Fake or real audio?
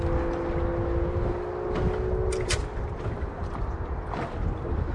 real